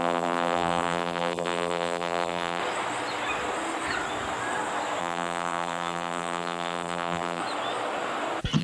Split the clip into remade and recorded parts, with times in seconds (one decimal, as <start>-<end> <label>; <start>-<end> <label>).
0.0-2.6 remade; 2.6-5.0 recorded; 5.0-7.4 remade; 7.4-8.6 recorded